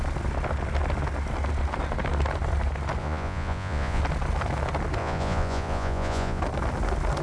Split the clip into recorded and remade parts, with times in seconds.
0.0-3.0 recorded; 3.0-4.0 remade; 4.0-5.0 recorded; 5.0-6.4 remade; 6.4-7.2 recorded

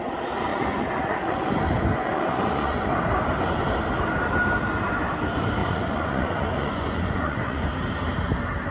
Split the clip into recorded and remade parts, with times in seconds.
0.0-0.5 recorded; 0.5-1.5 remade; 1.5-1.9 recorded; 1.9-2.9 remade; 2.9-5.6 recorded; 5.6-7.7 remade; 7.7-8.7 recorded

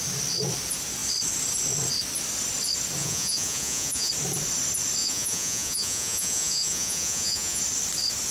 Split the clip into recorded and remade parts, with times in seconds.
0.0-3.0 recorded; 3.0-4.1 remade; 4.1-5.0 recorded; 5.0-7.6 remade; 7.6-8.3 recorded

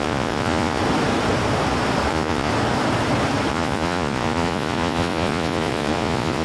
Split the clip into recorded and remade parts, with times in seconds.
0.0-0.8 remade; 0.8-2.1 recorded; 2.1-2.5 remade; 2.5-3.5 recorded; 3.5-6.4 remade

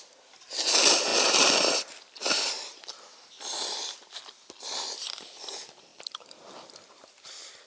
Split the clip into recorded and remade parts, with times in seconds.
0.0-7.7 recorded

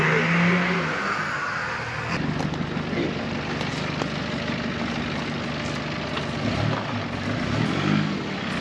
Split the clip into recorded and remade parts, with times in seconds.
0.0-8.6 recorded

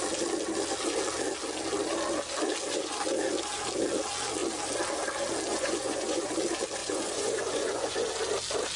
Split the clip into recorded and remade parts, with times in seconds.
0.0-5.5 recorded; 5.5-6.3 remade; 6.3-6.8 recorded; 6.8-8.1 remade; 8.1-8.8 recorded

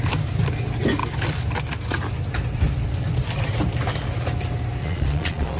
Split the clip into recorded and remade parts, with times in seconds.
0.0-4.8 recorded; 4.8-5.6 remade